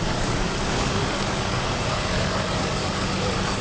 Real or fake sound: fake